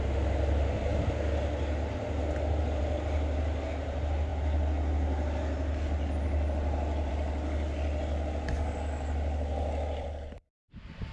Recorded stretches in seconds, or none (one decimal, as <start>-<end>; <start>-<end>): 0.0-11.1